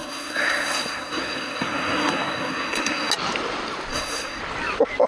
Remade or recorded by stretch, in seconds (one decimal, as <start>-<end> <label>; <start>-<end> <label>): 0.0-3.1 remade; 3.1-3.9 recorded; 3.9-4.4 remade; 4.4-5.1 recorded